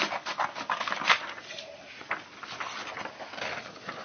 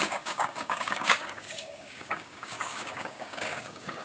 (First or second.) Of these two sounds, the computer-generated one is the second